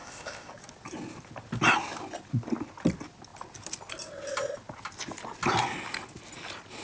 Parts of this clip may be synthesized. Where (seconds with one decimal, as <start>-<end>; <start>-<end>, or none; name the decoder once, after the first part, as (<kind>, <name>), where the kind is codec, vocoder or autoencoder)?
0.0-0.5 (codec, ZipCodec)